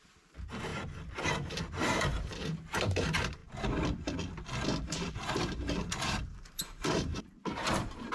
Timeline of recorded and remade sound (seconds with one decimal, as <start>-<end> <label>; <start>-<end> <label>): 0.0-0.7 remade; 0.7-1.3 recorded; 1.3-3.4 remade; 3.4-5.1 recorded; 5.1-8.1 remade